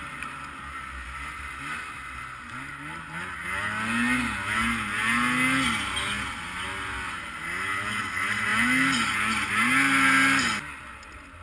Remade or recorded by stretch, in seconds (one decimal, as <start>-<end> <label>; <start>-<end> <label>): 0.0-11.4 recorded